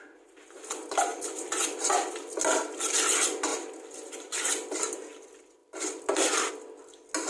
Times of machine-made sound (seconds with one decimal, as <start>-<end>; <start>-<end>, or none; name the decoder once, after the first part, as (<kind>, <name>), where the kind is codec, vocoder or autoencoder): 1.1-1.6 (vocoder, BigVGAN v2); 3.5-4.8; 5.6-6.5